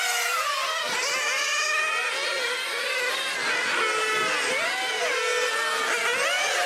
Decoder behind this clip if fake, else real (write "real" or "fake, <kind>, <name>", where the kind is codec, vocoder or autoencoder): real